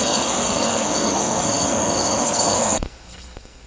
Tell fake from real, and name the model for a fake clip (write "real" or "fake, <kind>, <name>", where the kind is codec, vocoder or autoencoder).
fake, codec, SNAC